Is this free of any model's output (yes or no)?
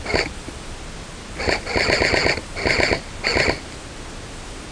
yes